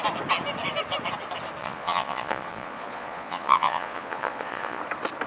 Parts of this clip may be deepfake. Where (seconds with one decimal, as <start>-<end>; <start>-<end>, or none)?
1.6-4.8